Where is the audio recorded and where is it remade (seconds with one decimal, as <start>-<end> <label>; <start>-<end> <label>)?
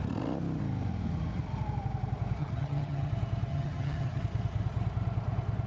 0.0-2.4 recorded; 2.4-3.1 remade; 3.1-3.5 recorded; 3.5-4.2 remade; 4.2-5.7 recorded